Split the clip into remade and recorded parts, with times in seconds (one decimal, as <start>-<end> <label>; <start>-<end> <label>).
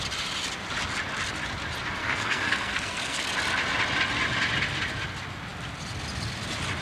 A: 0.0-2.0 recorded; 2.0-3.2 remade; 3.2-6.8 recorded